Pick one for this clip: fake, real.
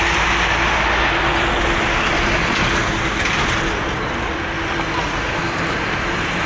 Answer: real